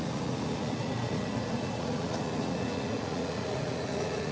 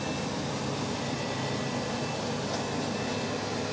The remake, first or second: first